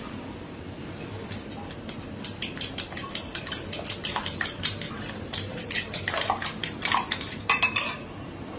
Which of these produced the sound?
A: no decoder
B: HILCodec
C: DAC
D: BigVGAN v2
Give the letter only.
D